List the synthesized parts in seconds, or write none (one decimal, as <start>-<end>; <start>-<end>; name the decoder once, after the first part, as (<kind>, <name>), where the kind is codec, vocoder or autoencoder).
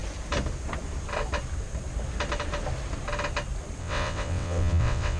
3.8-5.2 (vocoder, WaveNeXt)